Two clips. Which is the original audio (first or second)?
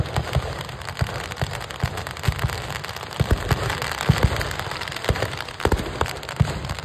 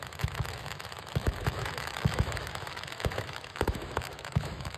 first